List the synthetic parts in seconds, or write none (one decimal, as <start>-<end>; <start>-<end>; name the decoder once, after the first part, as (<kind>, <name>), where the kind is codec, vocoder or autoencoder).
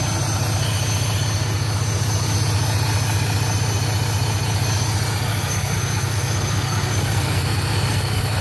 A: 5.3-8.4 (codec, SNAC)